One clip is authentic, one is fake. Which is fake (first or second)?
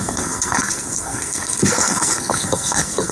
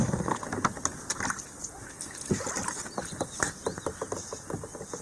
first